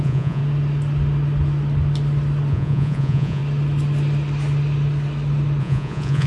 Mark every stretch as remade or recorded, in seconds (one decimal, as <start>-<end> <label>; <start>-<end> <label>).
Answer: 0.0-0.4 remade; 0.4-2.5 recorded; 2.5-3.4 remade; 3.4-5.6 recorded; 5.6-6.3 remade